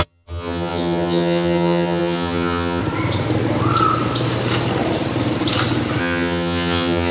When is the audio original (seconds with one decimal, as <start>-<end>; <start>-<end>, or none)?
2.8-6.0